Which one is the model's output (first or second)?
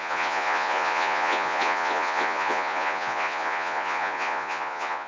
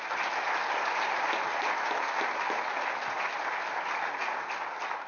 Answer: first